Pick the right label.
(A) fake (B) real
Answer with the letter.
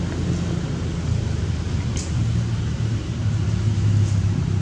B